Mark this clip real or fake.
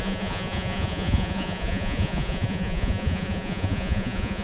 fake